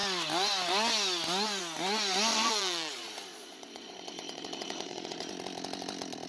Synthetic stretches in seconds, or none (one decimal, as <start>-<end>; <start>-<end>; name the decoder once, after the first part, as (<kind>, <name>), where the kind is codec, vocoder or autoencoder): 2.3-5.3 (vocoder, Vocos)

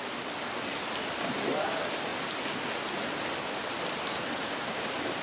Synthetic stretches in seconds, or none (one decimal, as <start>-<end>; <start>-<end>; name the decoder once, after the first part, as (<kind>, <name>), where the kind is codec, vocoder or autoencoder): none

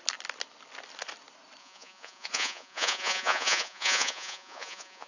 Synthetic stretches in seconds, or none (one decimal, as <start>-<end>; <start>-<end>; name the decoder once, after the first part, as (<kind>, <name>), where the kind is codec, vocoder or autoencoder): 1.6-5.1 (vocoder, Vocos)

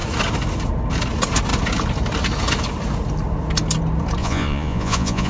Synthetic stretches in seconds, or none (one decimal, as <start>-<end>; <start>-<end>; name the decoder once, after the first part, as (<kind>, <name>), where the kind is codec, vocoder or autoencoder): 4.2-5.3 (vocoder, Vocos)

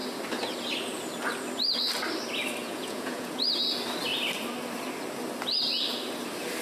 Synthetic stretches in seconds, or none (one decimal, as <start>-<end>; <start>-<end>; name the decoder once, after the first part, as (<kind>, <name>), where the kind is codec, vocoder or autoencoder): 2.6-3.4 (vocoder, Vocos)

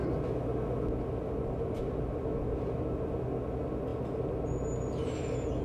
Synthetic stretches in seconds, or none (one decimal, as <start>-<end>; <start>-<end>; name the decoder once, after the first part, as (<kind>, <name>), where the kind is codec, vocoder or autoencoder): none

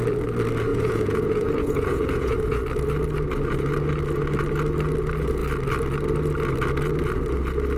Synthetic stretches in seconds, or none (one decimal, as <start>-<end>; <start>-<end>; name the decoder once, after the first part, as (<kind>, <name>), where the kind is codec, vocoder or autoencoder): 0.7-2.6 (vocoder, Vocos)